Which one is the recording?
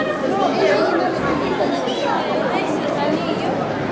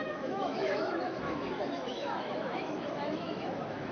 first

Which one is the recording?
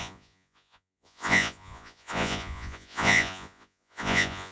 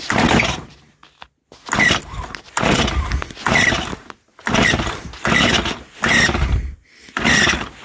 second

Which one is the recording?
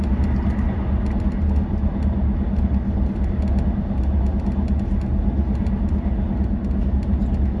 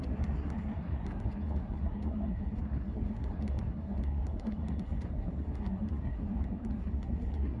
first